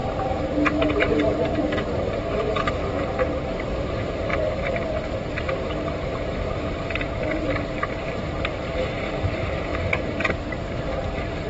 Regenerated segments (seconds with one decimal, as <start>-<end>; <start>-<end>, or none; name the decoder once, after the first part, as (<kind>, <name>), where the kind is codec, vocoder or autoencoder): 0.0-11.5 (vocoder, BigVGAN v2)